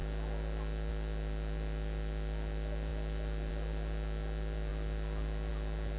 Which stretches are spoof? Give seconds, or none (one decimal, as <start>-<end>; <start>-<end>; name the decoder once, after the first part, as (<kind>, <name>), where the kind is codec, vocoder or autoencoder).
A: none